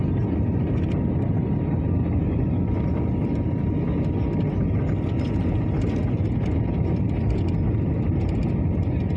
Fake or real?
real